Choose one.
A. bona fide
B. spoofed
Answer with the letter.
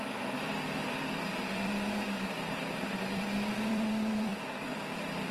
B